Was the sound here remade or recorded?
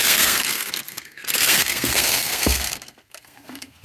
remade